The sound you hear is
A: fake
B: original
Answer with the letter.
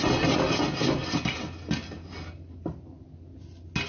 B